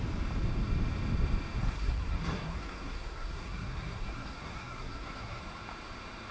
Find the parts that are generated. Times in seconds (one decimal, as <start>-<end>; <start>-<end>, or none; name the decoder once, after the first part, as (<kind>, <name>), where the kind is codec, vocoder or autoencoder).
1.6-5.4 (codec, SNAC)